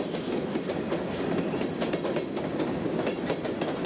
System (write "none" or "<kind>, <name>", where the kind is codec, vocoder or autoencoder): none